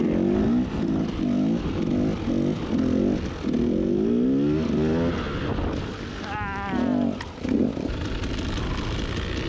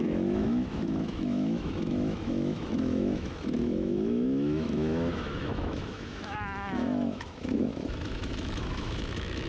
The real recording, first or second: first